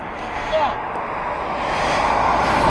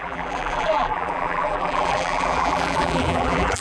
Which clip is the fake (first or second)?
second